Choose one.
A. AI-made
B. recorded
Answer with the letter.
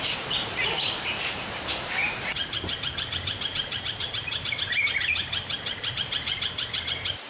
A